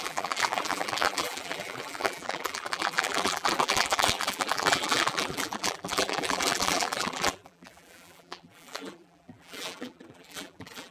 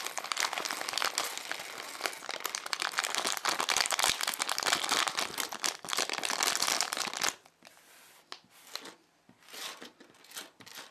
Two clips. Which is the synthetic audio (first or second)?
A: first